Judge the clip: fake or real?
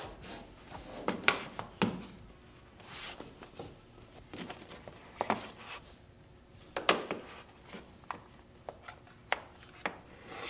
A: real